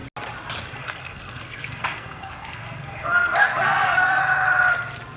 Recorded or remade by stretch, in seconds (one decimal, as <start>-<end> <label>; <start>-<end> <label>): 0.0-0.8 recorded; 0.8-4.2 remade; 4.2-5.2 recorded